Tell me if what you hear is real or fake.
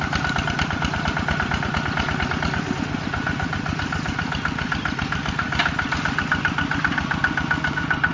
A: real